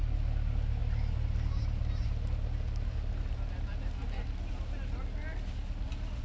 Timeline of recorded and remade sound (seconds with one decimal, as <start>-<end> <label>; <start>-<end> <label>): 0.0-6.2 recorded